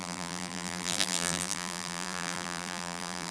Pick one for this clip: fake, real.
fake